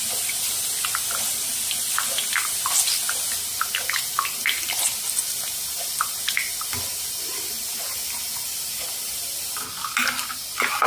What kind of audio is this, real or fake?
real